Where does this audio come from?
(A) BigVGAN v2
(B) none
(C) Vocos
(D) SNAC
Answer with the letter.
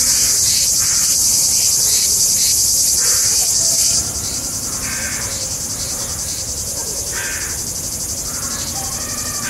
A